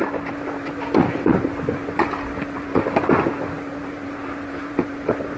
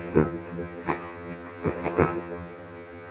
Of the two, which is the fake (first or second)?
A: second